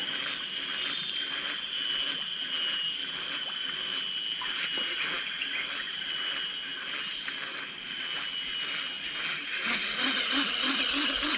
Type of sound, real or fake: real